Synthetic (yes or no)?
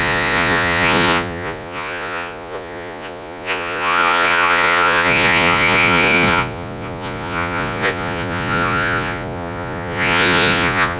yes